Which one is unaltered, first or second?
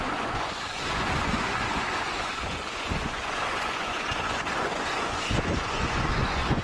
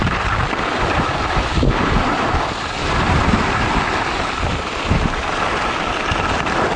second